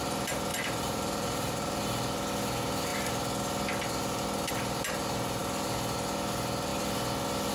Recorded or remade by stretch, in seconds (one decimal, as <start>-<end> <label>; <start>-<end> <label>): 0.0-0.5 recorded; 0.5-1.8 remade; 1.8-7.5 recorded